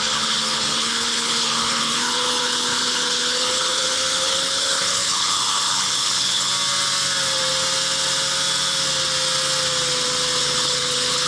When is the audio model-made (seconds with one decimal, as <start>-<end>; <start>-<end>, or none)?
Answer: 0.0-6.5; 10.4-11.3